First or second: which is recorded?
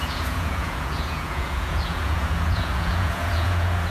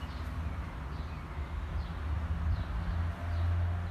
second